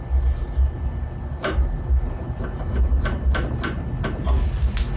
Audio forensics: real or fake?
real